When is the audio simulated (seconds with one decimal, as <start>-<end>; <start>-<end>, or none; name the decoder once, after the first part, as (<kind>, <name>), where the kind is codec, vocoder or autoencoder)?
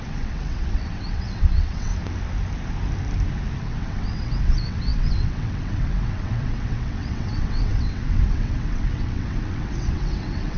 0.0-1.9 (vocoder, WaveNeXt); 3.6-10.6